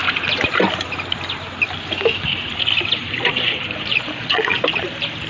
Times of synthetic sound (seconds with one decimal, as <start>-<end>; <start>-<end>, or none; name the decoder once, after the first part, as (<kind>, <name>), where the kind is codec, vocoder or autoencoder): 3.9-4.6 (vocoder, Vocos)